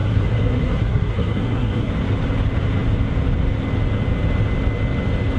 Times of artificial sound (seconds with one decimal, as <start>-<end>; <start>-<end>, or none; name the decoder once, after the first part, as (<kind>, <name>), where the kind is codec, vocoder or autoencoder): 0.0-1.9 (codec, SNAC)

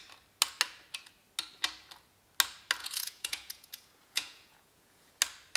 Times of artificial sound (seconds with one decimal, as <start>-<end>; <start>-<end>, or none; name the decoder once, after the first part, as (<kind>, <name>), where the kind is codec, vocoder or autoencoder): 2.8-5.1 (vocoder, Vocos)

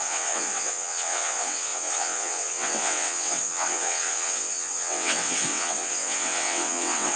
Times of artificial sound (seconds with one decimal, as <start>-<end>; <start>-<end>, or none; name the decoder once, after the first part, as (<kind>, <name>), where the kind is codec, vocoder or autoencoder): 0.0-7.2 (vocoder, WaveNeXt)